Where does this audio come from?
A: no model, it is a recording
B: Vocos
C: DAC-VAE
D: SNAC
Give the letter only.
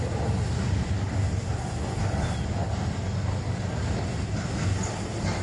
A